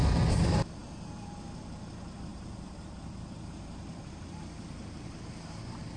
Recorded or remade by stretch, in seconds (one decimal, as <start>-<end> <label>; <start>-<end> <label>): 0.0-2.3 recorded; 2.3-6.0 remade